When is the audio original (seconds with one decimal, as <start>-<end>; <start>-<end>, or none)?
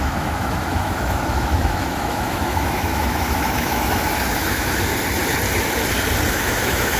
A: 4.9-6.3